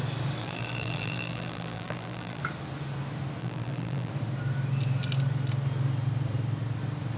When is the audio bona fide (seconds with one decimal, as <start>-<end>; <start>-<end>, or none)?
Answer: 0.0-0.4; 2.4-3.4; 4.1-7.2